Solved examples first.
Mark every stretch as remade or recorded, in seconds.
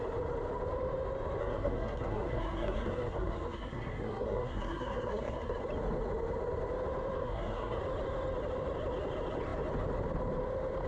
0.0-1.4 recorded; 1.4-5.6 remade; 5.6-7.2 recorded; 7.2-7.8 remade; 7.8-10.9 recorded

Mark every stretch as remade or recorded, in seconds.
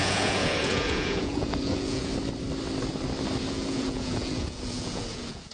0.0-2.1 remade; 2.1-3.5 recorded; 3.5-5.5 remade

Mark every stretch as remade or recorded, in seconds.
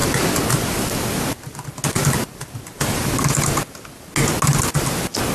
0.0-5.3 recorded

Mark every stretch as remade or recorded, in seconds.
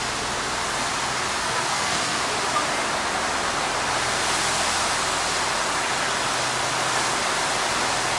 0.0-1.4 recorded; 1.4-2.3 remade; 2.3-8.2 recorded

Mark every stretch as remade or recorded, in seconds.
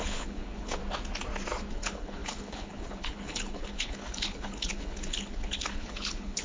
0.0-0.8 remade; 0.8-1.7 recorded; 1.7-6.4 remade